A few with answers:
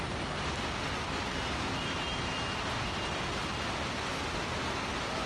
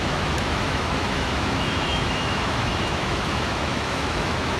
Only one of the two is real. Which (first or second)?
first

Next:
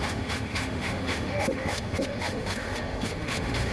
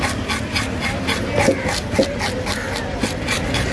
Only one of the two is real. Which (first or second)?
second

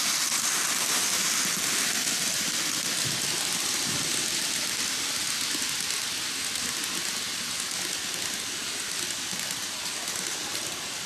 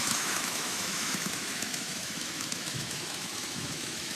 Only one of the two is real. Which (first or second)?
first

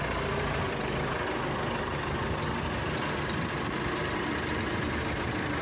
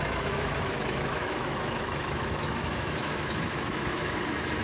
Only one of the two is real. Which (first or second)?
first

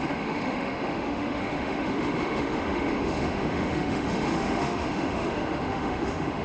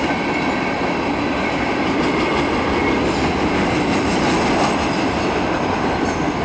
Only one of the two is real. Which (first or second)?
second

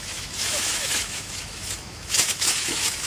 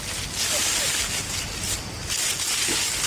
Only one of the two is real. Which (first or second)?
second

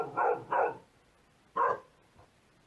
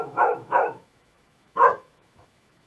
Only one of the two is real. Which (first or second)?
first